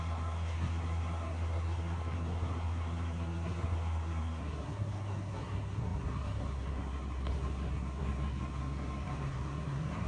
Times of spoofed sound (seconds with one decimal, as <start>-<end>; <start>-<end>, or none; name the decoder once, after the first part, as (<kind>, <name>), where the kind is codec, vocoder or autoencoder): 0.0-10.1 (codec, SNAC)